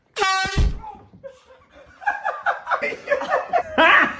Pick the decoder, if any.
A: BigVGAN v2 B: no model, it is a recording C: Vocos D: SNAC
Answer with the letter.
B